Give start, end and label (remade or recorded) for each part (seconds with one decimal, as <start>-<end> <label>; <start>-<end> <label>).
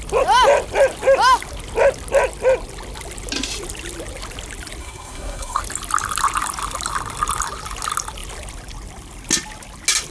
0.0-4.8 recorded; 4.8-5.6 remade; 5.6-10.1 recorded